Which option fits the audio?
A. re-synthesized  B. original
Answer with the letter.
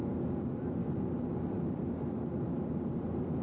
B